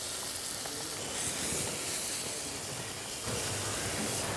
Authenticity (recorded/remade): recorded